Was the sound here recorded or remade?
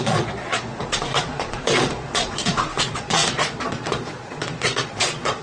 remade